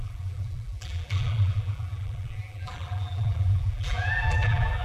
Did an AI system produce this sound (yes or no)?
yes